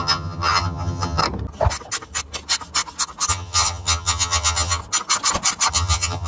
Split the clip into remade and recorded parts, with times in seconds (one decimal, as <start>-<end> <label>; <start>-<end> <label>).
0.0-1.2 remade; 1.2-3.3 recorded; 3.3-4.8 remade; 4.8-5.7 recorded; 5.7-6.3 remade